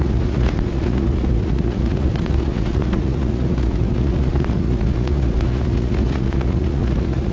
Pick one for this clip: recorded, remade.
remade